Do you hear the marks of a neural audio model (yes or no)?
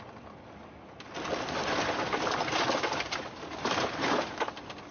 no